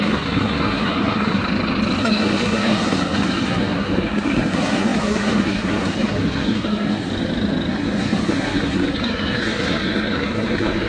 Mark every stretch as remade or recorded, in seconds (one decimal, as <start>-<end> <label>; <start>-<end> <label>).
0.0-1.4 remade; 1.4-2.0 recorded; 2.0-7.1 remade; 7.1-7.7 recorded; 7.7-10.9 remade